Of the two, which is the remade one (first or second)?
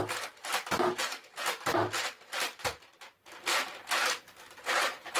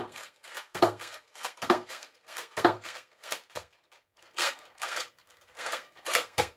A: second